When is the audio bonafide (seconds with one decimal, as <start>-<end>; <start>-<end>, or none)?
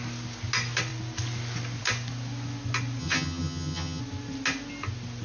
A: 0.0-3.0; 4.0-5.2